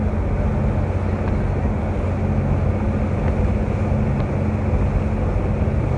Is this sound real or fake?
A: real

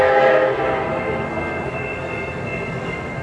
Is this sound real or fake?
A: fake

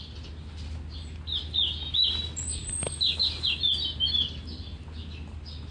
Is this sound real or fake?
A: real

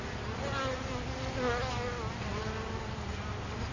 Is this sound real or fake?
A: real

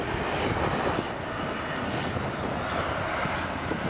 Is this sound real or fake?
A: real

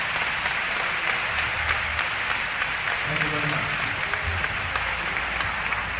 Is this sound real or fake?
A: real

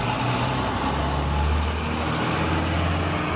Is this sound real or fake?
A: real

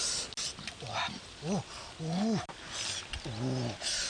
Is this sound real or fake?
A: real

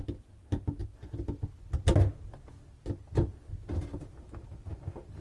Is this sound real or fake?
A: real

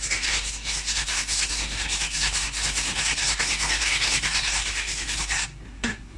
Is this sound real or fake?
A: fake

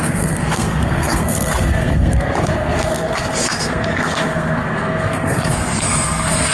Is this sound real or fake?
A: fake